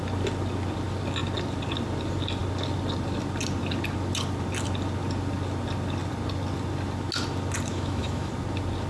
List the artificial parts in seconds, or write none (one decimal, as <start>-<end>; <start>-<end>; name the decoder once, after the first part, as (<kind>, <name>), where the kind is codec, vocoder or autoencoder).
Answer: 7.7-8.3 (autoencoder, DAC-VAE)